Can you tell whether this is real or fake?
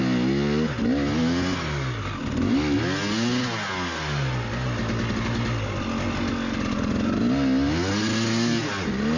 real